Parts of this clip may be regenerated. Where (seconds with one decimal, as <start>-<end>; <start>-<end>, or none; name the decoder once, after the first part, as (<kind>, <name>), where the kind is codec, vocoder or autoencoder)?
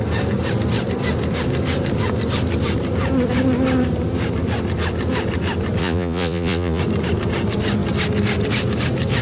5.8-6.8 (vocoder, Vocos)